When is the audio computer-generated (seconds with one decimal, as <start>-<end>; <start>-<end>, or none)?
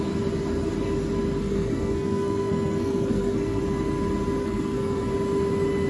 1.4-3.6; 4.4-5.1